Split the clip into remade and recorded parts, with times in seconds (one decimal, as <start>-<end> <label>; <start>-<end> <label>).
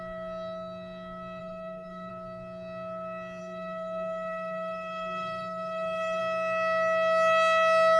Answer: 0.0-1.4 recorded; 1.4-2.1 remade; 2.1-3.4 recorded; 3.4-6.2 remade; 6.2-8.0 recorded